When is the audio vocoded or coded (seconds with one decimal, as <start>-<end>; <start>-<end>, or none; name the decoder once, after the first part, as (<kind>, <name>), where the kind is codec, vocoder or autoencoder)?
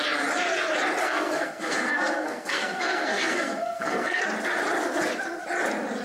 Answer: 1.0-4.2 (codec, SNAC)